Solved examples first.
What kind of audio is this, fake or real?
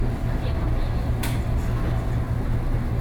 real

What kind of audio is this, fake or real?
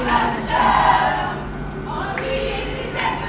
real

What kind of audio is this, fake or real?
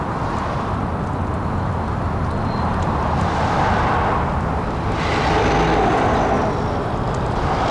real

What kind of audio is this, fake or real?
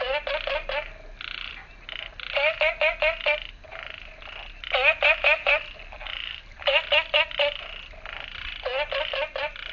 real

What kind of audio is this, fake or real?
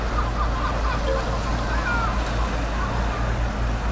real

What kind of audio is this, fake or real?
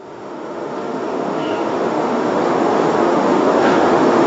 fake